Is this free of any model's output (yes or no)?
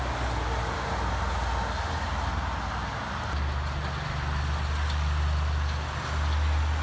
yes